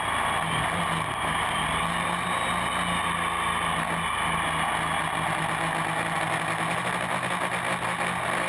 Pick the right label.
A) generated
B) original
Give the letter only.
B